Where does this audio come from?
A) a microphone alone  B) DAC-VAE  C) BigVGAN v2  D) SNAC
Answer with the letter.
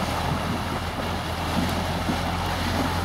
A